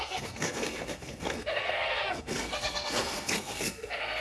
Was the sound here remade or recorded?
remade